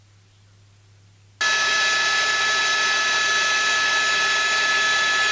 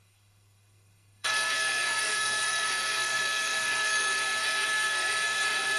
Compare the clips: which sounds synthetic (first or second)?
second